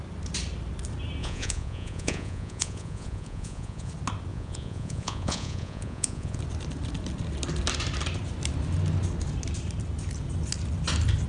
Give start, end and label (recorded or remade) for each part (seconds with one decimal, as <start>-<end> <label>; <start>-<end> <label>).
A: 0.0-1.2 recorded; 1.2-3.9 remade; 3.9-4.3 recorded; 4.3-6.4 remade; 6.4-11.3 recorded

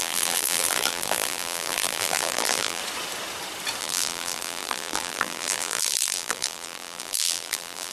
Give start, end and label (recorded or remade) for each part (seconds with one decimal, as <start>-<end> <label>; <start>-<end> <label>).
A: 0.0-2.8 remade; 2.8-3.8 recorded; 3.8-7.9 remade

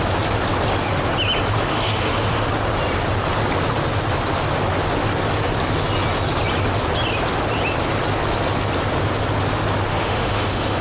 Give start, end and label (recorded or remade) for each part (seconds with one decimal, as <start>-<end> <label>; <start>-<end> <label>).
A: 0.0-1.7 recorded; 1.7-2.5 remade; 2.5-9.9 recorded; 9.9-10.8 remade

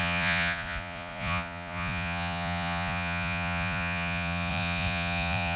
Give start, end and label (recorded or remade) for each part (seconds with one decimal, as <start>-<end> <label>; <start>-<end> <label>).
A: 0.0-5.6 remade

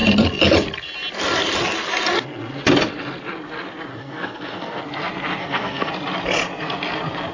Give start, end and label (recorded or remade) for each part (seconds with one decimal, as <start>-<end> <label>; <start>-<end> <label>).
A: 0.0-3.9 recorded; 3.9-4.8 remade; 4.8-5.4 recorded; 5.4-5.9 remade; 5.9-7.3 recorded

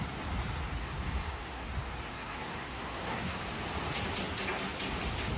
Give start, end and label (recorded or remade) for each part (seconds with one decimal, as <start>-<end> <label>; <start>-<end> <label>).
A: 0.0-0.8 recorded; 0.8-1.7 remade; 1.7-2.1 recorded; 2.1-3.4 remade; 3.4-5.4 recorded